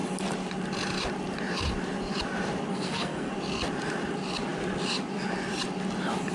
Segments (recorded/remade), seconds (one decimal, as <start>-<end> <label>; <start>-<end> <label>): 0.0-2.7 recorded; 2.7-3.3 remade; 3.3-6.3 recorded